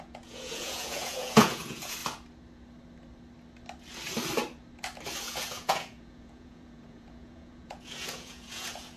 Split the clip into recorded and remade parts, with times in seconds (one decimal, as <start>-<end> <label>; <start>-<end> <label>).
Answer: 0.0-2.0 remade; 2.0-5.2 recorded; 5.2-9.0 remade